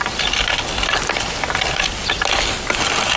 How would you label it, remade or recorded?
recorded